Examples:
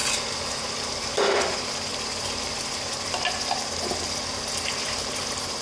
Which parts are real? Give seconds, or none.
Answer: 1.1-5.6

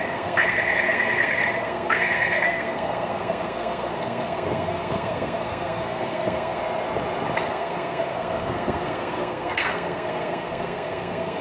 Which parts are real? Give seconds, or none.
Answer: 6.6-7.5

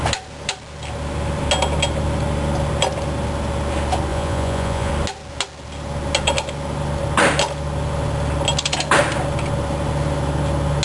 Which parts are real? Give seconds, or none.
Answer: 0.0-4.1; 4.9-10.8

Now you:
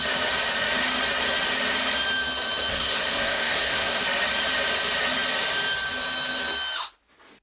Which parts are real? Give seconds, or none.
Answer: 0.0-2.7; 4.0-7.4

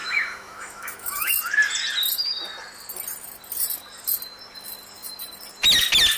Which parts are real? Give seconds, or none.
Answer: 1.3-6.2

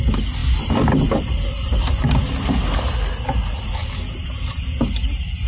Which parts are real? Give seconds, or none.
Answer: 0.0-5.5